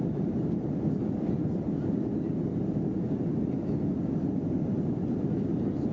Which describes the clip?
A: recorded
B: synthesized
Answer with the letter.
A